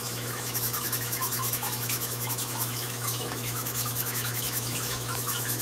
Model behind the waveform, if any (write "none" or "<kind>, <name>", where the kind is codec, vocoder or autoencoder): autoencoder, DAC-VAE